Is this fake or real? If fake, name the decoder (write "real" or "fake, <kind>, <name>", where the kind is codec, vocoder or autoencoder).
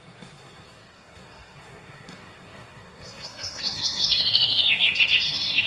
fake, codec, SNAC